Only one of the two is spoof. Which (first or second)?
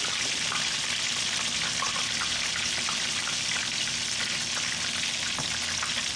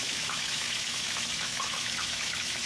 second